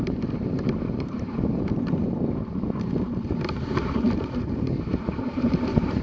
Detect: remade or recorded remade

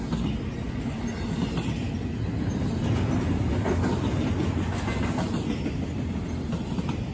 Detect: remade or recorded recorded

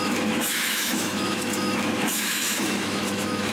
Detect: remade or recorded remade